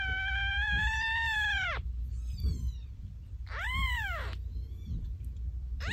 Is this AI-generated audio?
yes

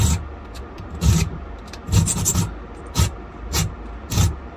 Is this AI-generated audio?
no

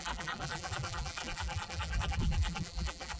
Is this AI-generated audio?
yes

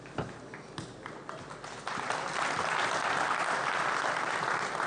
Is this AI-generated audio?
no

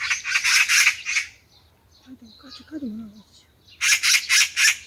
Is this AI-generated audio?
no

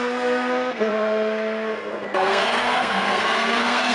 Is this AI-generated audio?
yes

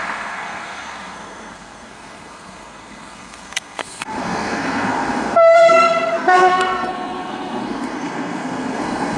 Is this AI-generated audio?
yes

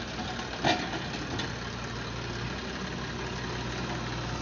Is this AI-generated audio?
no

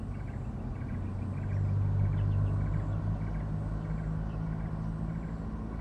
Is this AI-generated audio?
no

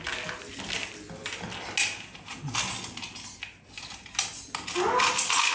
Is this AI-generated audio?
no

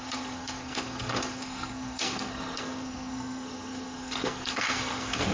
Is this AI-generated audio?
yes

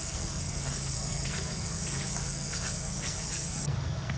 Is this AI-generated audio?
yes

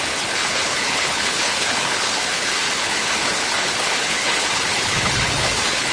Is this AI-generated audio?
yes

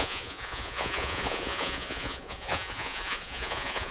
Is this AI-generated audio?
yes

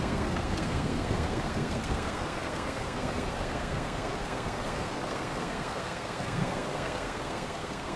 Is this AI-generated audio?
yes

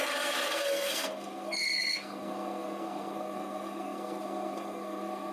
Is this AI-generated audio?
yes